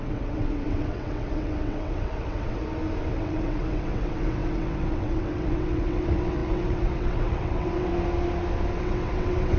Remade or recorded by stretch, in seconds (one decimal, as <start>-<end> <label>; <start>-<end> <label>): 0.0-2.6 remade; 2.6-3.1 recorded; 3.1-7.9 remade; 7.9-8.8 recorded; 8.8-9.6 remade